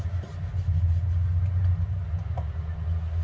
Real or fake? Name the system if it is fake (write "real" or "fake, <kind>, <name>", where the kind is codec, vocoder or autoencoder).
real